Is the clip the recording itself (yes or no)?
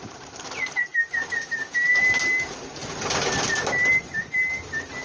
yes